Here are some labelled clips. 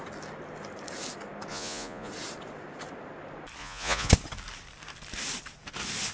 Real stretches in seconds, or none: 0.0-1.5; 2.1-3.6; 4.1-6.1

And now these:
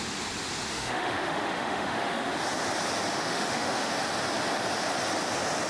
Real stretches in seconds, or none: 0.0-0.7; 2.3-3.1; 3.9-5.7

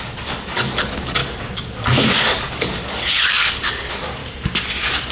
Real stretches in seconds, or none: 1.2-2.2; 4.2-5.1

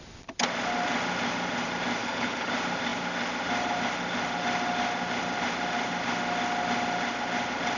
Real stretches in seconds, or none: 0.0-2.0; 2.5-7.8

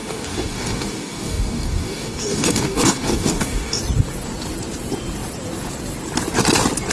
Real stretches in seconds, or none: 3.8-6.9